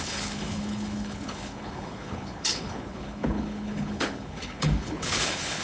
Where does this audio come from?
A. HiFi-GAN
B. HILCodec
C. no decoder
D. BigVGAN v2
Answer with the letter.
B